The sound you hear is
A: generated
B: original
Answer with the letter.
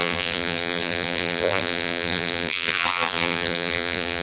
A